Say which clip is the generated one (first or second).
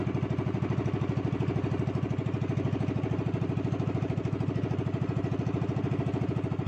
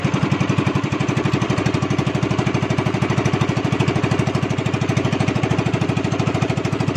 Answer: second